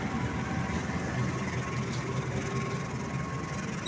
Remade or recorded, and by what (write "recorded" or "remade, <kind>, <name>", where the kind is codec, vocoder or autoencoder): recorded